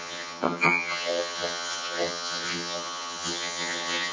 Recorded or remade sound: remade